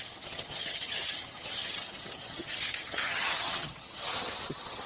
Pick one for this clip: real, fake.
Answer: fake